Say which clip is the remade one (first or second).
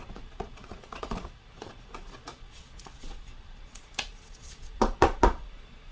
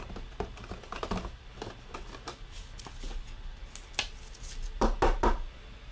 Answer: first